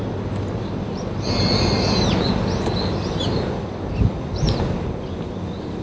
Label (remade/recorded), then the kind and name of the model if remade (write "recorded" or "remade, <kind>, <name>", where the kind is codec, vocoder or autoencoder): recorded